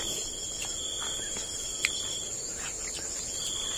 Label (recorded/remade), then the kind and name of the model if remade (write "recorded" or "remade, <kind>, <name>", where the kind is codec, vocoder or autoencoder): recorded